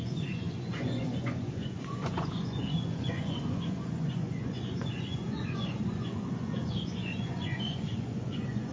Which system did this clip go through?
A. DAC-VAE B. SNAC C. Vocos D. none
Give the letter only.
C